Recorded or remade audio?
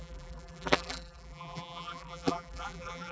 remade